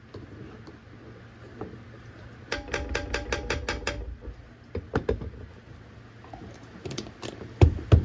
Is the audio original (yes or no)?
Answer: yes